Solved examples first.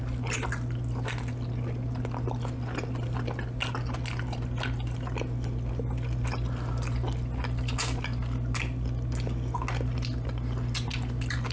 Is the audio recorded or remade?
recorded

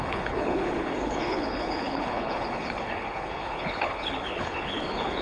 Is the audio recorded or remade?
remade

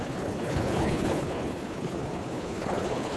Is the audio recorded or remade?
remade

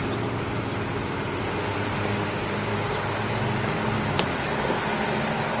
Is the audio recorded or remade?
recorded